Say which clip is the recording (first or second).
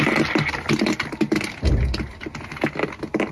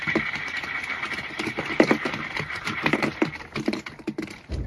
first